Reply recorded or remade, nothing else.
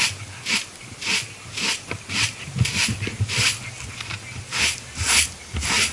recorded